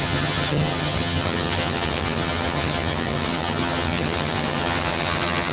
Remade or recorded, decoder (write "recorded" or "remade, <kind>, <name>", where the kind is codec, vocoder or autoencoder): remade, vocoder, HiFi-GAN